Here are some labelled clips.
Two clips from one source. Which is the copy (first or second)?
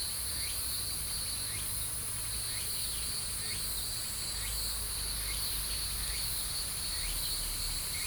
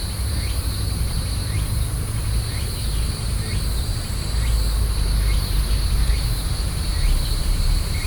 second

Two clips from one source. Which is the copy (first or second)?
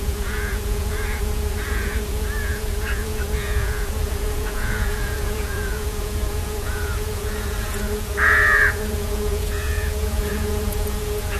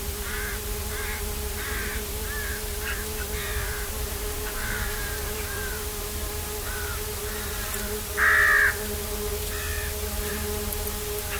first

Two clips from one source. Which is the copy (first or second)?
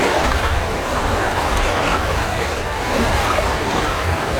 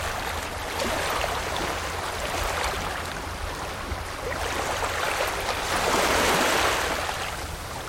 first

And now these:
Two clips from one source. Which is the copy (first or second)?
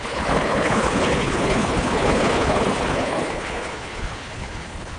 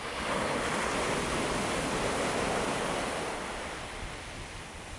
first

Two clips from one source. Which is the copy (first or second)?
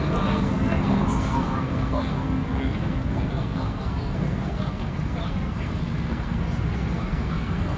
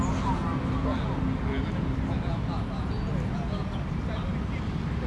first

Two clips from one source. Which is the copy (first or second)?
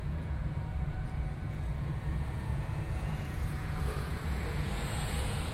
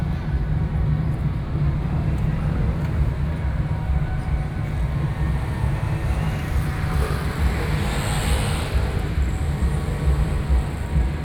first